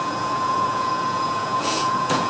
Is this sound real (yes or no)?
no